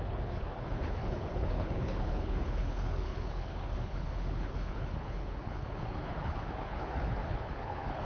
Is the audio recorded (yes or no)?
no